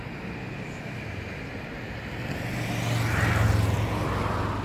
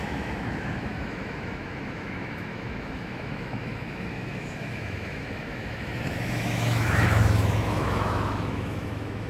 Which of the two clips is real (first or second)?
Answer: first